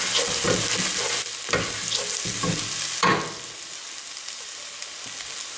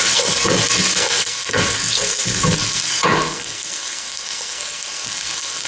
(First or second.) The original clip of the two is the first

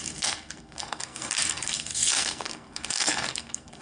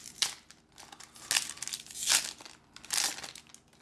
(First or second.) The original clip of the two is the second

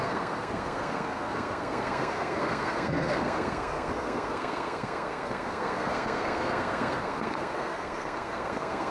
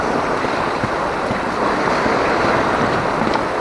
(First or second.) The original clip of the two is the second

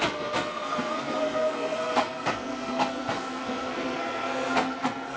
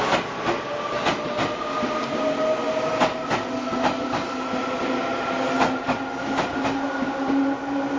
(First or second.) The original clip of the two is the second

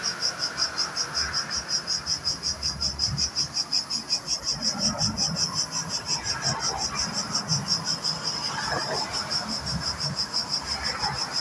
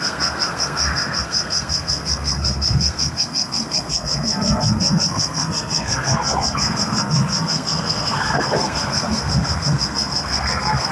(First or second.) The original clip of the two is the first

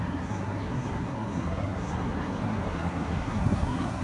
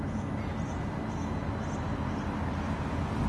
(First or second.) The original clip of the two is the second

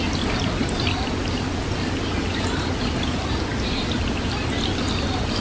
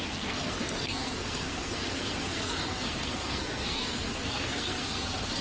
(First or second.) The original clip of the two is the first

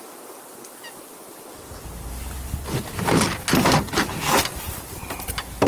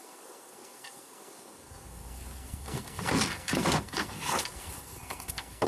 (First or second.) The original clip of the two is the first